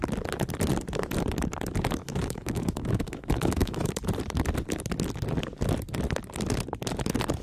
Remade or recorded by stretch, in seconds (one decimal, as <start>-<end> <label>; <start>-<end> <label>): 0.0-2.0 recorded; 2.0-3.9 remade; 3.9-7.4 recorded